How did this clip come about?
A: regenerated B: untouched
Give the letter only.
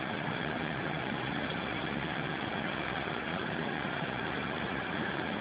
A